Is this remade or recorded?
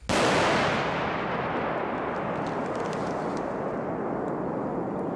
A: recorded